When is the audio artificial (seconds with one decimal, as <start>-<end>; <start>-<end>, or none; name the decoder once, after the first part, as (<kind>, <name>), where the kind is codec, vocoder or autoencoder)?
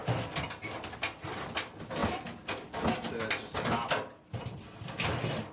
none